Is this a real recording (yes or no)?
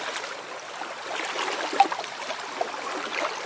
yes